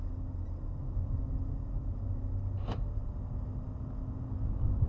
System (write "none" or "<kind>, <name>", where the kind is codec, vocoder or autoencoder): none